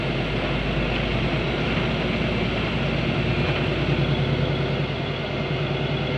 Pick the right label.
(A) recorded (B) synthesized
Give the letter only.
A